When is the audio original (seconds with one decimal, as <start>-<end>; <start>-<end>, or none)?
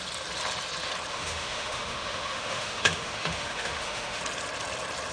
0.0-1.1; 4.2-5.1